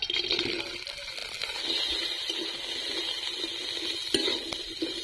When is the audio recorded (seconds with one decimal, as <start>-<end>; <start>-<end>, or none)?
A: 0.0-5.0